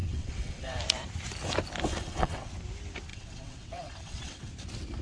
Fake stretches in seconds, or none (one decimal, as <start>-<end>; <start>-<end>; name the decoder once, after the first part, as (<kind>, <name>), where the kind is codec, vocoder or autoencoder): 0.0-0.8 (vocoder, WaveNeXt); 1.9-2.5; 3.1-4.5